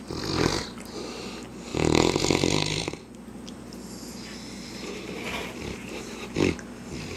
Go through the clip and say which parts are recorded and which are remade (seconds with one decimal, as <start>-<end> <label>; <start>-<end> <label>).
0.0-7.2 recorded